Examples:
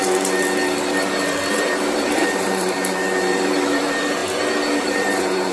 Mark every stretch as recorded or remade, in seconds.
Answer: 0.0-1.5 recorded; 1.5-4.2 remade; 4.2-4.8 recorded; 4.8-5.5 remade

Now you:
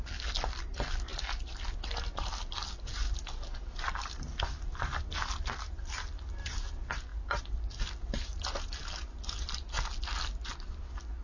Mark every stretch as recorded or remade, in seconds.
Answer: 0.0-11.2 recorded

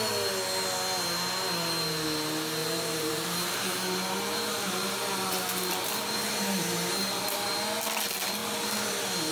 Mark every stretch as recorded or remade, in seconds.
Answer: 0.0-2.6 recorded; 2.6-7.5 remade; 7.5-9.3 recorded

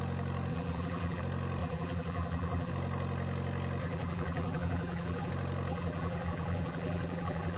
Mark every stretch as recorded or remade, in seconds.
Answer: 0.0-0.5 recorded; 0.5-1.2 remade; 1.2-1.6 recorded; 1.6-2.7 remade; 2.7-3.8 recorded; 3.8-5.3 remade; 5.3-5.7 recorded; 5.7-7.6 remade